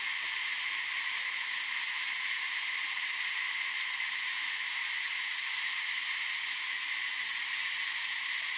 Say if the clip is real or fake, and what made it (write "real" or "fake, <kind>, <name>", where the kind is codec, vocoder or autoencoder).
real